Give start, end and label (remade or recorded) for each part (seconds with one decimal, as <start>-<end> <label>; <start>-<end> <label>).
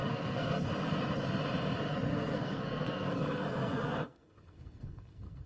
0.0-0.7 remade; 0.7-2.1 recorded; 2.1-5.5 remade